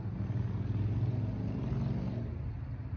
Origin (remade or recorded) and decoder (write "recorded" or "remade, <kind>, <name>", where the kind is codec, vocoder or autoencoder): recorded